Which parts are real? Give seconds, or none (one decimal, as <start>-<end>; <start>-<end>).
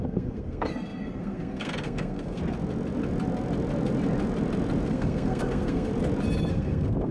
2.4-4.9; 5.9-6.5